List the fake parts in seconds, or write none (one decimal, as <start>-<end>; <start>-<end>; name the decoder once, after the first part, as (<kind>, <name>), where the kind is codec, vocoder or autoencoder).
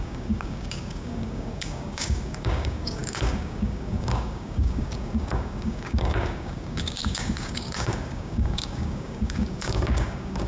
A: 0.0-10.5 (codec, DAC)